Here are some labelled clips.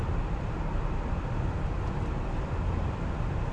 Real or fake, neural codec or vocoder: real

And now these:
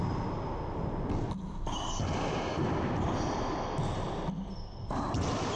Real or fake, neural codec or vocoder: real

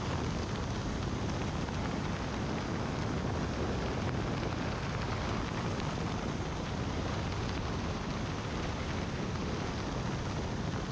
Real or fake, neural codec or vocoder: real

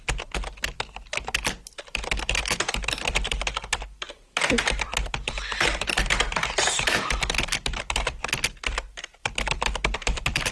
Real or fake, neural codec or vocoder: fake, vocoder, BigVGAN v2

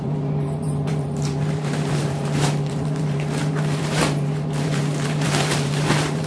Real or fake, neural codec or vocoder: fake, vocoder, BigVGAN v2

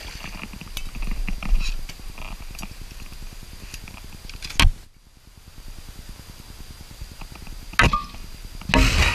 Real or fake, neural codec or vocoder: real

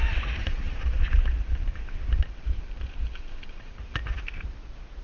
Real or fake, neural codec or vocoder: fake, vocoder, BigVGAN v2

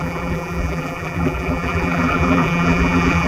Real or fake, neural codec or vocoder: fake, vocoder, BigVGAN v2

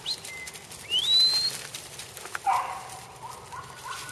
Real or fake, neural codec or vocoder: real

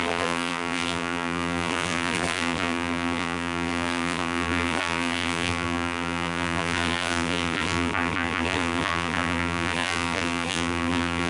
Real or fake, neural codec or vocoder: fake, vocoder, BigVGAN v2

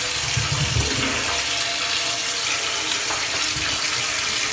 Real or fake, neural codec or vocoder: real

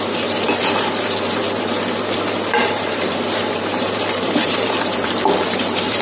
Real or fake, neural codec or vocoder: fake, vocoder, BigVGAN v2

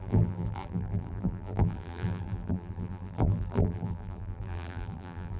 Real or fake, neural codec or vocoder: fake, vocoder, BigVGAN v2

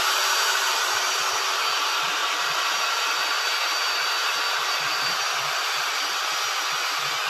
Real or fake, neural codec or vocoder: fake, vocoder, BigVGAN v2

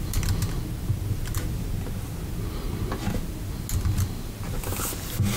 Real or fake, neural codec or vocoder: real